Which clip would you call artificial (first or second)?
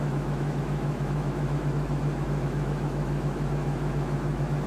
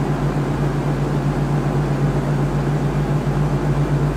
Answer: first